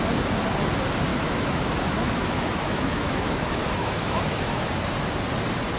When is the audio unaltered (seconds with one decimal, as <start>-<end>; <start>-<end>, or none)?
0.0-1.1; 4.6-5.8